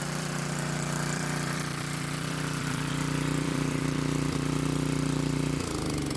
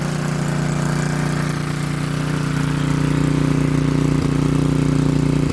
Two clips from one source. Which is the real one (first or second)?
second